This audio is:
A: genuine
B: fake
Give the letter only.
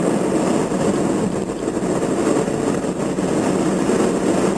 A